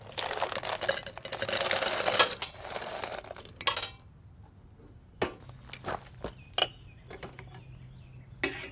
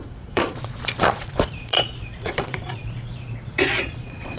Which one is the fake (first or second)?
second